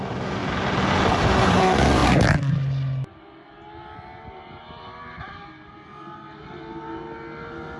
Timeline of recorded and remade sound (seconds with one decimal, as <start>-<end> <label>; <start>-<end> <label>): 0.0-7.8 recorded